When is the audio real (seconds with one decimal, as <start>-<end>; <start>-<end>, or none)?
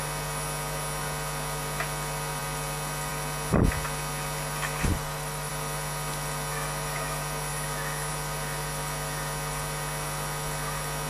0.0-4.9; 5.5-11.1